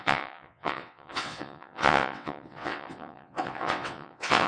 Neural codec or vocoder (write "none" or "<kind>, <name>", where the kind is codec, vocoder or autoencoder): vocoder, WaveNeXt